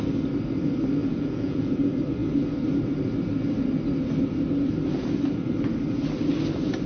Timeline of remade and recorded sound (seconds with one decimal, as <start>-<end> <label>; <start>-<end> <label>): 0.0-1.0 recorded; 1.0-1.8 remade; 1.8-6.9 recorded